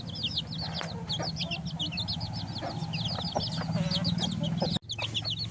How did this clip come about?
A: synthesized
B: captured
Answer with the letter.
B